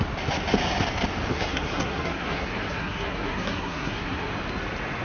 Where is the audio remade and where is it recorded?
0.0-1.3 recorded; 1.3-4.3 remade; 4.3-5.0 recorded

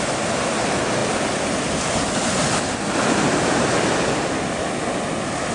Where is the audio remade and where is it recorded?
0.0-5.5 recorded